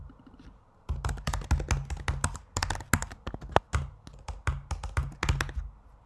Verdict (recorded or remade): recorded